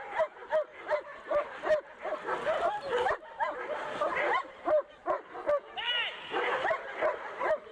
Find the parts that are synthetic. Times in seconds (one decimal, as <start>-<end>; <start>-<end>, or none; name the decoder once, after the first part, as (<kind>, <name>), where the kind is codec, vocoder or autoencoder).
0.0-5.0 (vocoder, BigVGAN v2); 6.3-7.7